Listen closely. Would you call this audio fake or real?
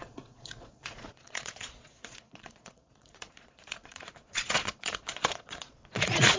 fake